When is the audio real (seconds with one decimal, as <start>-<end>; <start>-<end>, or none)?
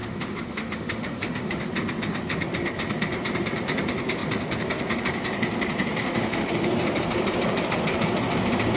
1.6-6.0; 6.5-8.8